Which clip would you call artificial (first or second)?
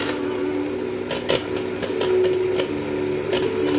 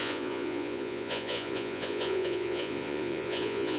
second